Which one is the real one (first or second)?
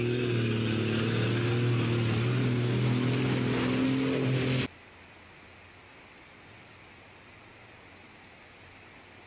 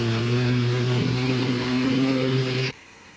first